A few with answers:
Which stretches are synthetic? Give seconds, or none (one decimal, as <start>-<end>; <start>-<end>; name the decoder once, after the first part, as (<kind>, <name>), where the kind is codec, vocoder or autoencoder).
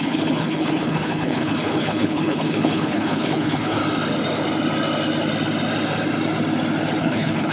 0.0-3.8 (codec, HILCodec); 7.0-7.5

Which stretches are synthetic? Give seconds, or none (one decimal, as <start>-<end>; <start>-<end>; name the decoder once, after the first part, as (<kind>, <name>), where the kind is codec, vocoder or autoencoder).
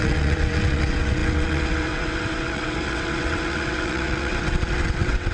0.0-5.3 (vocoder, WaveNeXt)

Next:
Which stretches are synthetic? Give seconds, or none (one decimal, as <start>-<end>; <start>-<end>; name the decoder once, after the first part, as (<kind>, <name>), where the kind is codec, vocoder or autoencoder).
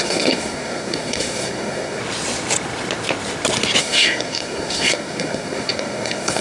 0.0-2.0 (codec, SNAC); 3.8-6.4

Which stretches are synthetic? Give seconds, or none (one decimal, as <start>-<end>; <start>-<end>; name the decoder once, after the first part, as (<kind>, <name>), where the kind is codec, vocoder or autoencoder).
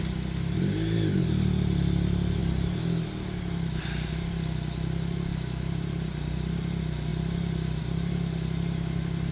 none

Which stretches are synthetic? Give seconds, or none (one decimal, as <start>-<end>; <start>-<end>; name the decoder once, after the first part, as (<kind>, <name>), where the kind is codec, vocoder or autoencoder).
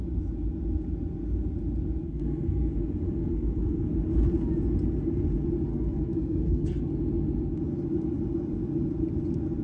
2.0-2.7 (codec, SNAC); 3.2-3.9; 5.7-6.9